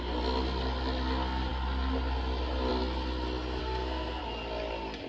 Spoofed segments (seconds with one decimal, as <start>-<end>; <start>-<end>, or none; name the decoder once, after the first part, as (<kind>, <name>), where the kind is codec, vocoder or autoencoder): 3.6-4.2 (codec, SNAC)